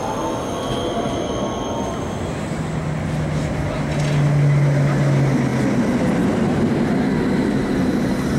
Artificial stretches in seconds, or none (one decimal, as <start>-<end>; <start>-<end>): none